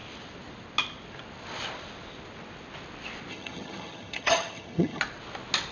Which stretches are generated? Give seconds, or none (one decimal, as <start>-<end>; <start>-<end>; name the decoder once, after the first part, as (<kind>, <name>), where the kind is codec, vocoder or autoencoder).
3.3-5.0 (vocoder, HiFi-GAN)